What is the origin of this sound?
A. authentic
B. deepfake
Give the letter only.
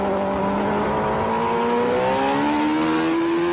A